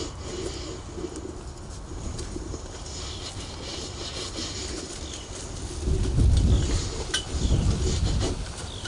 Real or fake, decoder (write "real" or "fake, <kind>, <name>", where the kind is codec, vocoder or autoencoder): real